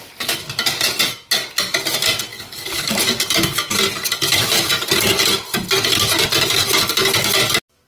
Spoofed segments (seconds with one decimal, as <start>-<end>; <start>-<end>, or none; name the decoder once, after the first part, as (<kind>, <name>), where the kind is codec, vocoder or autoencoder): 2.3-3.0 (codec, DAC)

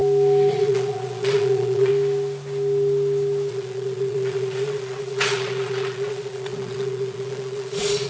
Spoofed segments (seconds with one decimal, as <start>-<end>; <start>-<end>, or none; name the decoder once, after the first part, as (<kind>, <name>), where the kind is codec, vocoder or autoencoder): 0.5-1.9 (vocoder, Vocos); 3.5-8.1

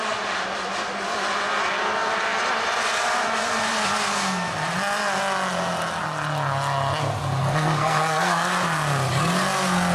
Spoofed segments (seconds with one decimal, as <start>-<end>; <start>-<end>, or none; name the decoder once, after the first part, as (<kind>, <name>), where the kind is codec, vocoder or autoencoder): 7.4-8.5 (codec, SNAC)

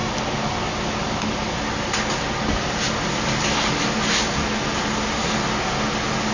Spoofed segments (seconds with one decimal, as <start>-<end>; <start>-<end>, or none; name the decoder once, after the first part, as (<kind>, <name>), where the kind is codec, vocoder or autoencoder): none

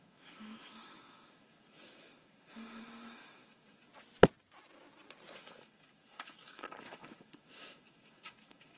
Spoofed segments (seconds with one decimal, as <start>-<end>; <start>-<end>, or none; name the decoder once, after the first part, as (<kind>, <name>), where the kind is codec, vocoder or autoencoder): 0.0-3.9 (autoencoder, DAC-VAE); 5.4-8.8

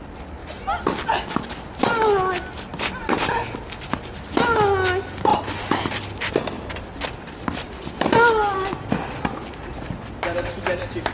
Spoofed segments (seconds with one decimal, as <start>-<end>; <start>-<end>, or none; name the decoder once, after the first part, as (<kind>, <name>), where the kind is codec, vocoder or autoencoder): none

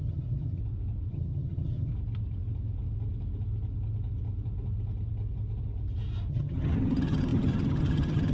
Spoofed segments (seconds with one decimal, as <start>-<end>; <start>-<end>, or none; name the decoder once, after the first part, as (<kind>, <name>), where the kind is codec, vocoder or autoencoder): 0.0-0.6 (vocoder, HiFi-GAN); 1.1-1.9; 6.3-8.3

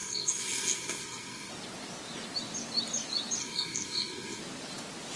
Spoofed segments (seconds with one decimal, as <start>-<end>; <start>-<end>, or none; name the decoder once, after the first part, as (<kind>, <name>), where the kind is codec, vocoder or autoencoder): 0.0-1.5 (codec, SNAC); 3.4-4.4